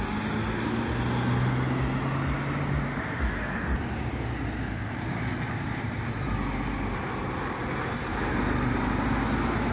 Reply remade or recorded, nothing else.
recorded